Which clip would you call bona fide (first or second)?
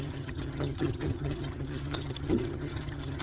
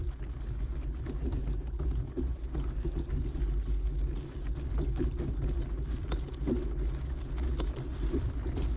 second